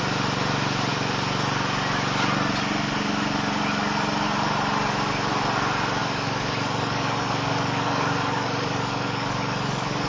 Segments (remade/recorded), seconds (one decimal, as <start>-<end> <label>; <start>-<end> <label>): 0.0-6.0 recorded; 6.0-10.1 remade